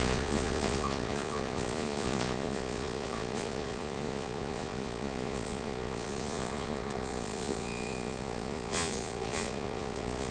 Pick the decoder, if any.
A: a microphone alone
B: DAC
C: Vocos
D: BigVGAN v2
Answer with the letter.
C